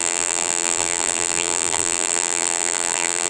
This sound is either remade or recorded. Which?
remade